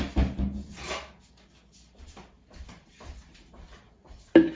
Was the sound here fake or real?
real